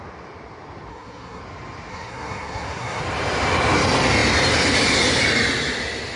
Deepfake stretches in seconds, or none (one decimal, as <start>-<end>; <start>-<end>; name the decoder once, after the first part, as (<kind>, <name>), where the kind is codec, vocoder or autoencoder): 0.9-1.4 (codec, SNAC); 1.9-3.0